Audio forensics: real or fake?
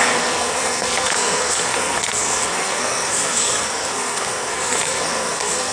fake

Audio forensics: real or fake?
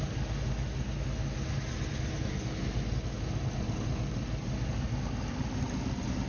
real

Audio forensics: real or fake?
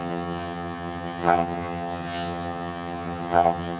fake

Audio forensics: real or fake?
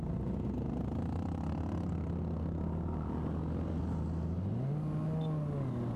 real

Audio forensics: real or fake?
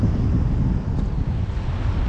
real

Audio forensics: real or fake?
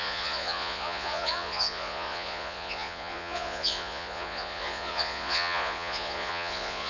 fake